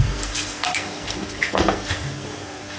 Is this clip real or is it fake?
fake